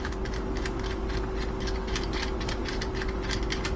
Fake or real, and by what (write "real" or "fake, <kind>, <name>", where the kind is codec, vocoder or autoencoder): real